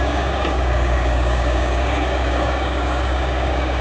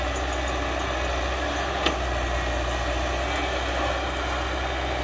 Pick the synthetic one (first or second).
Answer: first